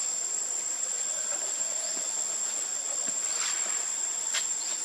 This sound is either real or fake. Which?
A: fake